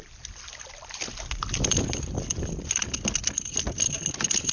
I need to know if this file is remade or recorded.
recorded